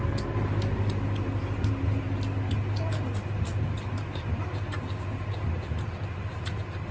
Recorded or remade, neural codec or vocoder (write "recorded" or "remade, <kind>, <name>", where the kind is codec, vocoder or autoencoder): recorded